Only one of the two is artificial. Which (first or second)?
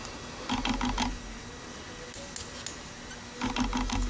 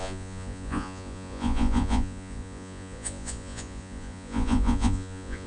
second